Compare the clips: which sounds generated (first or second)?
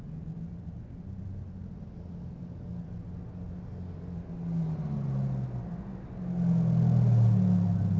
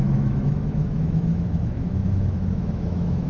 second